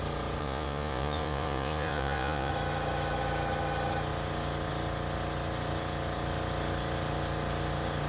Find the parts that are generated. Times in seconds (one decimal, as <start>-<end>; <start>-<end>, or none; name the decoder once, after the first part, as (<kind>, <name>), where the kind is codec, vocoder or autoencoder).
0.4-2.5 (vocoder, Vocos)